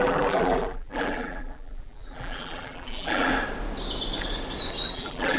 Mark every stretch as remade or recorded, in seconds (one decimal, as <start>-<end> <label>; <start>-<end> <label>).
0.0-3.3 remade; 3.3-4.9 recorded; 4.9-5.4 remade